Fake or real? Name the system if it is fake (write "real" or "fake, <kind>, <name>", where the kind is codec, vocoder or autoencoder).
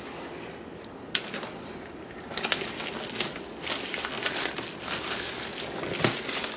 real